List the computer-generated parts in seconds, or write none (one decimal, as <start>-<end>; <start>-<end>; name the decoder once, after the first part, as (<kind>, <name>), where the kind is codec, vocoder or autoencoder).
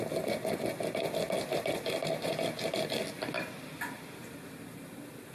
none